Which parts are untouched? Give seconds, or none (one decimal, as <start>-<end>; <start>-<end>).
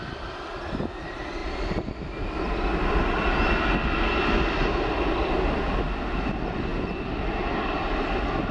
0.0-8.5